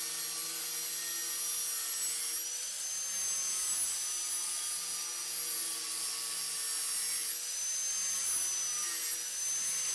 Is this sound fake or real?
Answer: real